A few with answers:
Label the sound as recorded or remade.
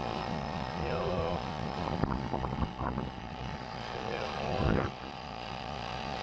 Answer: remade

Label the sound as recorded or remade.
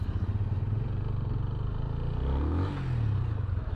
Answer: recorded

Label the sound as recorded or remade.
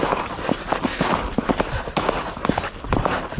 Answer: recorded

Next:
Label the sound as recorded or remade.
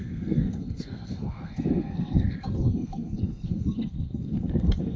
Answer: remade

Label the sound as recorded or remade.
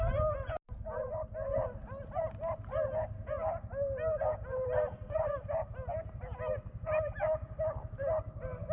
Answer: recorded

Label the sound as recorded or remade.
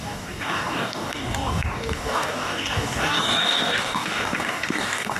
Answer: remade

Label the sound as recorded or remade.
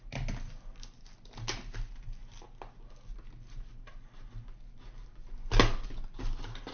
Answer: recorded